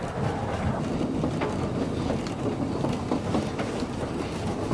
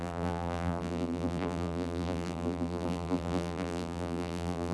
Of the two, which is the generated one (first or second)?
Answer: second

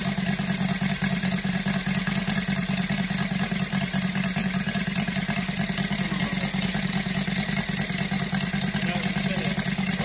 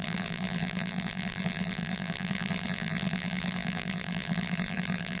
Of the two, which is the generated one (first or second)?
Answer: second